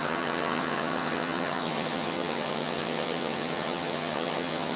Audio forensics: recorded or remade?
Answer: remade